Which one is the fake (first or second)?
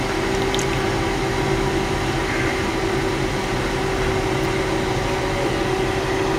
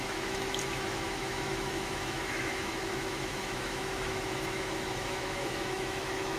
second